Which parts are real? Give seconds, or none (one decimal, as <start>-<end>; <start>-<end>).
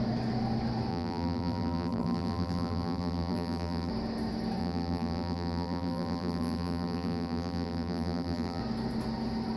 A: 0.0-0.9; 3.9-4.6; 8.6-9.6